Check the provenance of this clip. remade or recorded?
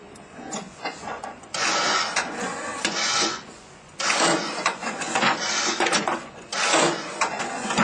remade